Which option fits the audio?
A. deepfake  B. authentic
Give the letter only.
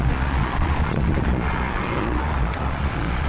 A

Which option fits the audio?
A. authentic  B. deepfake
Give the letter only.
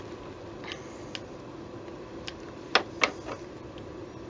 A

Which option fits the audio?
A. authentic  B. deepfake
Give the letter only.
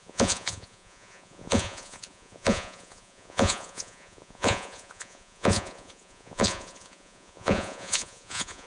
B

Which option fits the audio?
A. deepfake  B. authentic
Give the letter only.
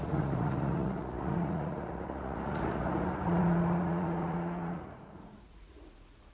A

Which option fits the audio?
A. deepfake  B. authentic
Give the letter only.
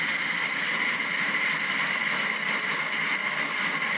B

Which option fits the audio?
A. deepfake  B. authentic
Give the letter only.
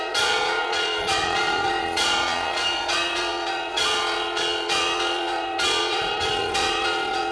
A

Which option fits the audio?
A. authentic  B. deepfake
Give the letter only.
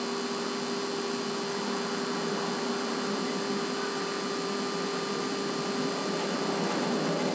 A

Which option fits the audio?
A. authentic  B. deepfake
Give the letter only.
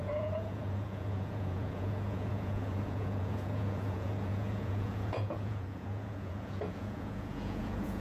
B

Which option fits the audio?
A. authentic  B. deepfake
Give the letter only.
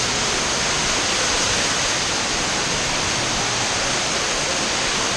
A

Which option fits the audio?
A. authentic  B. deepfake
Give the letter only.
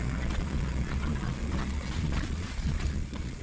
B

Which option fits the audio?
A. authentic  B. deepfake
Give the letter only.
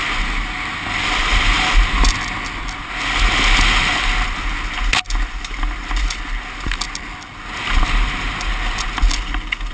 A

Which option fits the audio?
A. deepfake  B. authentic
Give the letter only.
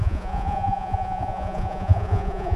A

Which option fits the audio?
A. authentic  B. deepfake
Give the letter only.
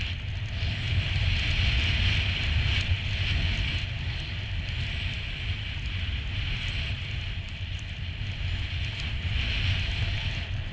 A